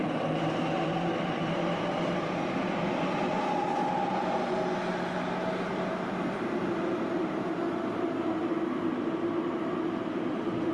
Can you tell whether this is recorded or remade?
recorded